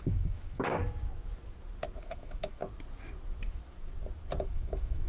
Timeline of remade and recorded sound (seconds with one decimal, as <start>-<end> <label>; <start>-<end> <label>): 0.0-0.8 remade; 0.8-2.0 recorded; 2.0-2.6 remade; 2.6-4.4 recorded; 4.4-5.1 remade